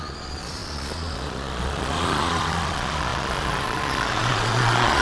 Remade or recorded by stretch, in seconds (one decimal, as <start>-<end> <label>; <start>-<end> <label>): 0.0-5.0 remade